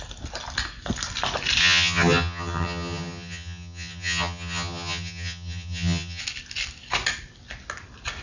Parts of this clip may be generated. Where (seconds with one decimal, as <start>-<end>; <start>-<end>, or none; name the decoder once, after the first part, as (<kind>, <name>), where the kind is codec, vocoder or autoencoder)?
1.6-6.2 (vocoder, HiFi-GAN)